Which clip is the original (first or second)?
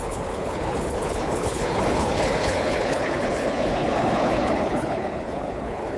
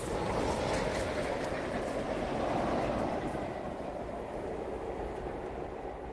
second